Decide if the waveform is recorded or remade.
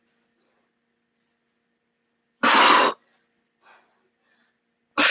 recorded